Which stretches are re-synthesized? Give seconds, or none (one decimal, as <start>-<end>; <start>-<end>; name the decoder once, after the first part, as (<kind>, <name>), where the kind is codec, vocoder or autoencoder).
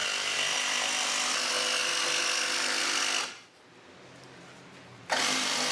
none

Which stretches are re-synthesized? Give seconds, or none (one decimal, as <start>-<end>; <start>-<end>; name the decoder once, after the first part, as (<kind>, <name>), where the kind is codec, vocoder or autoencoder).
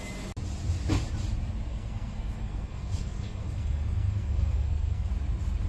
1.7-5.1 (codec, SNAC)